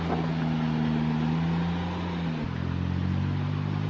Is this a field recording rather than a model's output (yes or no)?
yes